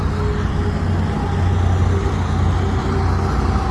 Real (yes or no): yes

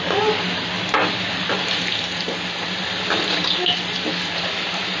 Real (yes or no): yes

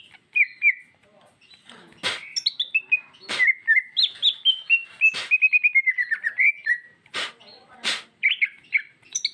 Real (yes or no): yes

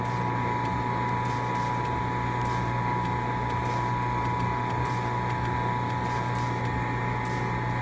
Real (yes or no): yes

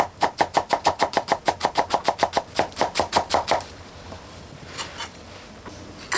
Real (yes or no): yes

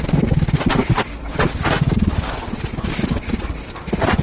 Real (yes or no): yes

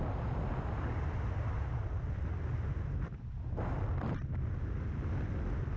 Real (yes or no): yes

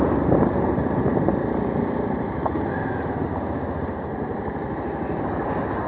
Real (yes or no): yes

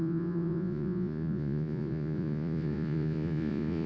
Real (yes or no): no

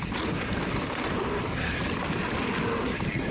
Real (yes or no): yes